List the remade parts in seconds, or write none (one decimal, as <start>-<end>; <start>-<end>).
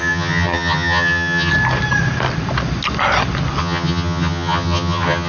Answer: 0.0-1.5; 3.6-5.3